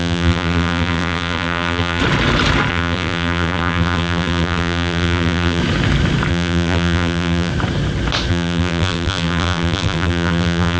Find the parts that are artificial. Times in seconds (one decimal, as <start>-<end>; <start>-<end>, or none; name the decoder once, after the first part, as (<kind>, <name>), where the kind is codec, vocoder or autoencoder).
0.0-2.0 (vocoder, BigVGAN v2); 2.7-5.6; 6.3-7.5; 8.3-10.8